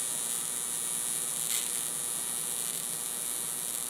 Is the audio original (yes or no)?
yes